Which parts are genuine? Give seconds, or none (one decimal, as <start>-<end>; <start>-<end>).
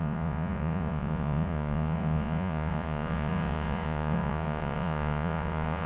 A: none